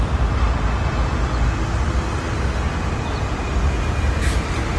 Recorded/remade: recorded